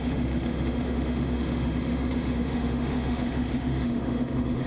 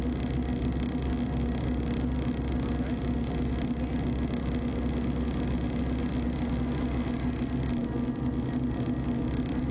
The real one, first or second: second